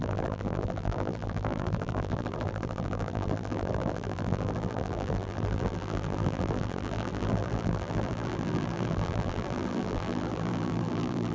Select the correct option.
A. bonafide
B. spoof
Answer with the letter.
B